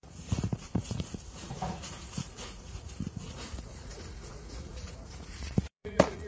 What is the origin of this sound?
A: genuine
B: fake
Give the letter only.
B